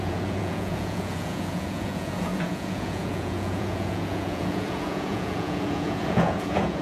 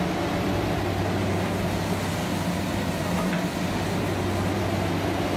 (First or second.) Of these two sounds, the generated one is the first